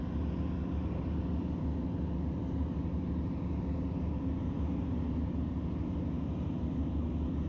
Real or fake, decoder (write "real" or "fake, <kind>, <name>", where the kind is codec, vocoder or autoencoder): real